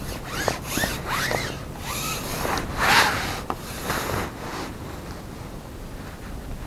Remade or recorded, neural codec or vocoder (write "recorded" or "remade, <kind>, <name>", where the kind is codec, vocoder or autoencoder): recorded